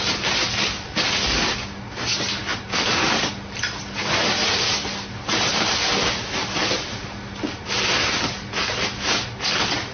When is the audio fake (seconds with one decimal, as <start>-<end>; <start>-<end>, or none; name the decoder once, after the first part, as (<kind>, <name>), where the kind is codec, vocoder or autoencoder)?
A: none